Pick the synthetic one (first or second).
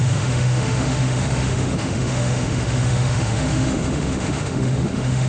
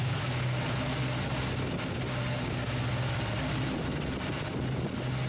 first